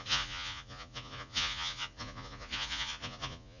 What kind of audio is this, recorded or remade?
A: remade